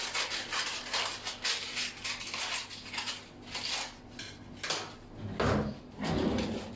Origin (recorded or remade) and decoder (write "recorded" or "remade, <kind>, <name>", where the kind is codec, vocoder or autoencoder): recorded